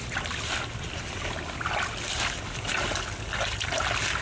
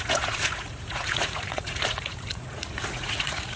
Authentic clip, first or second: first